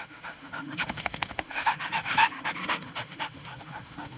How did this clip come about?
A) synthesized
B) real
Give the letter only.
A